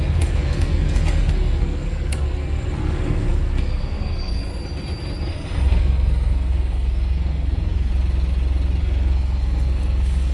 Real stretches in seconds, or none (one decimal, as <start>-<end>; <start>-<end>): 4.5-5.3; 7.9-8.8